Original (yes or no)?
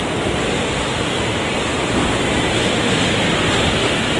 yes